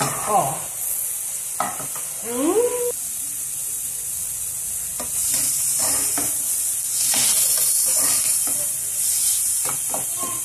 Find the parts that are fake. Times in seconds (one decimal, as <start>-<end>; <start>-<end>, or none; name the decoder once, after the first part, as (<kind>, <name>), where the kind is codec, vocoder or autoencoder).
none